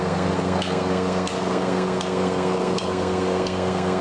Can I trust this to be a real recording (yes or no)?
no